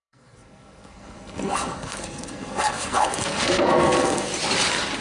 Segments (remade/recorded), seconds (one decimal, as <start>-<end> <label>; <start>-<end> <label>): 0.0-4.3 remade; 4.3-5.0 recorded